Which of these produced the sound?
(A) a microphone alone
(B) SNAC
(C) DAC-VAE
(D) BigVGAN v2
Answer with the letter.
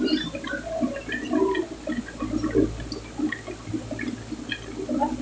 A